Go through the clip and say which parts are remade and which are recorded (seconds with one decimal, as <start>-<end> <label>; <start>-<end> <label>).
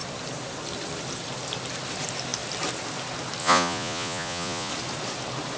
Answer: 0.0-3.4 recorded; 3.4-4.7 remade; 4.7-5.6 recorded